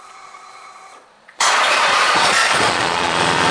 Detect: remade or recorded remade